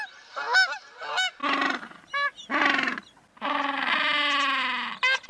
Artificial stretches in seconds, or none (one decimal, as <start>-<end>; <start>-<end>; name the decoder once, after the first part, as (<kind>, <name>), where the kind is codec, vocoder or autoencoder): none